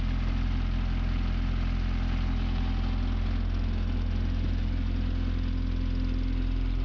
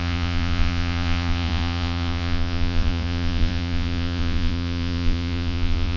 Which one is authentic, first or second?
first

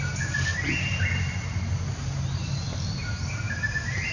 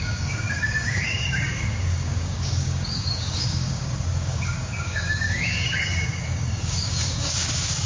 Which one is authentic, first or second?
first